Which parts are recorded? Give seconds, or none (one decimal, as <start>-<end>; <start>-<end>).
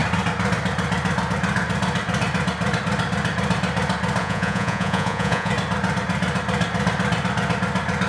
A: 0.0-4.2; 5.5-8.1